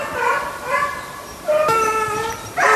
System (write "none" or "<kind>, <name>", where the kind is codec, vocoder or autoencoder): none